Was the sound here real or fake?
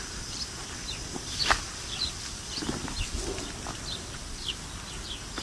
real